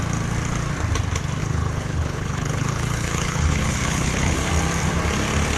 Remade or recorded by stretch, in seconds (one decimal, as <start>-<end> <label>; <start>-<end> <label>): 0.0-1.4 recorded; 1.4-4.5 remade; 4.5-5.6 recorded